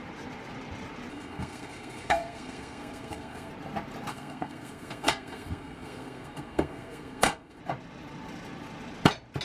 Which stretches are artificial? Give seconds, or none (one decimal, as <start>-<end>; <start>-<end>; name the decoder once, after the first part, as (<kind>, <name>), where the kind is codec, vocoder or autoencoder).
1.1-3.5 (codec, SNAC); 4.1-7.6